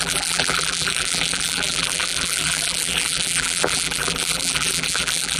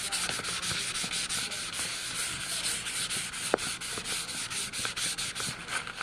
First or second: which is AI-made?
first